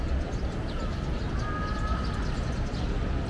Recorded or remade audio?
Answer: recorded